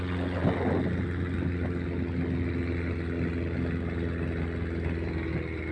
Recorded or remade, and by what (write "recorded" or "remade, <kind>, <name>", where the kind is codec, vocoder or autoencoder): recorded